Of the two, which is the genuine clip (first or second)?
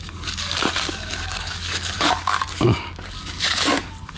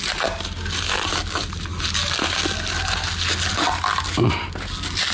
second